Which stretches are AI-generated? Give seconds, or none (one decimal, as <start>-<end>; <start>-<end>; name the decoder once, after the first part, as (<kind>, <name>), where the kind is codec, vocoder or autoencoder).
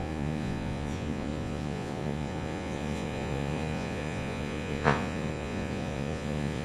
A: 0.0-6.6 (vocoder, Vocos)